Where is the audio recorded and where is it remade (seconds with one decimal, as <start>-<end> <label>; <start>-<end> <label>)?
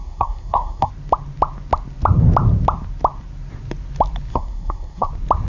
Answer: 0.0-0.9 remade; 0.9-4.3 recorded; 4.3-5.1 remade; 5.1-5.5 recorded